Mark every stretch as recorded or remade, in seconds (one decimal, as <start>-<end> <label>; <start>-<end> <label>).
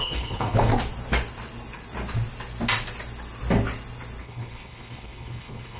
0.0-0.7 remade; 0.7-4.2 recorded; 4.2-5.8 remade